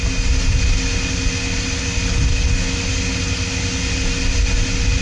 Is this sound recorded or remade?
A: recorded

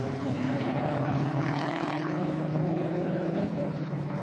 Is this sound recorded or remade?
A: remade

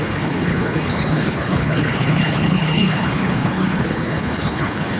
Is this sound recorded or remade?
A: remade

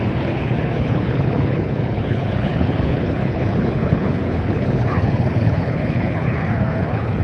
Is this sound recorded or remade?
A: remade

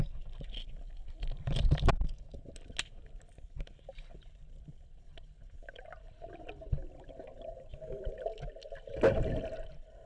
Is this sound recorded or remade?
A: recorded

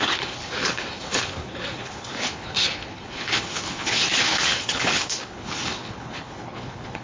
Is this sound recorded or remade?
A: remade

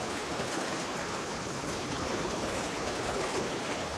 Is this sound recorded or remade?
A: remade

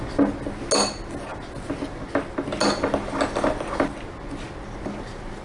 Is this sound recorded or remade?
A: recorded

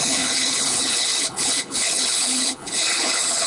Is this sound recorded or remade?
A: remade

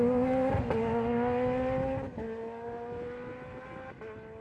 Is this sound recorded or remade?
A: recorded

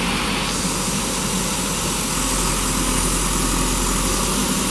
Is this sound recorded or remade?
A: recorded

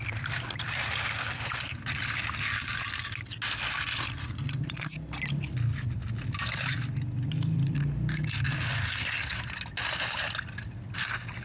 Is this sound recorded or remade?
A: recorded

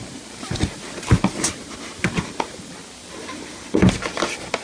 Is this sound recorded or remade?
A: recorded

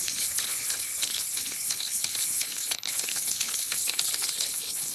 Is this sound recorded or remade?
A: remade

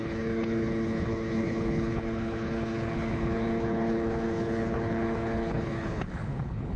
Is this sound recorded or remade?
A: remade